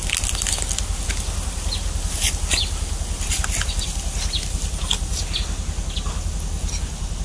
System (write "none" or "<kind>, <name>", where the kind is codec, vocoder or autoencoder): none